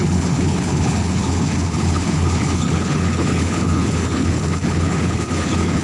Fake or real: fake